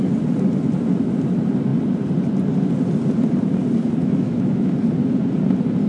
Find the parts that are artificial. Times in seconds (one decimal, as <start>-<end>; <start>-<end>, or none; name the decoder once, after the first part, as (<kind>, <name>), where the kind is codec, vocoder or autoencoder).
4.0-4.7 (autoencoder, DAC-VAE)